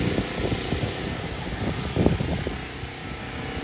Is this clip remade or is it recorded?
recorded